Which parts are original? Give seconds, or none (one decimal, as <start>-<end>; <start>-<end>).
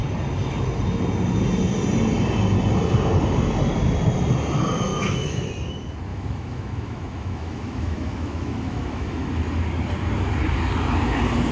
0.0-4.9; 5.5-6.1; 9.3-11.5